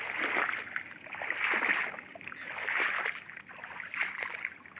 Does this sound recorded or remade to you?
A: recorded